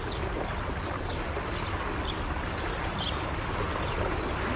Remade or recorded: recorded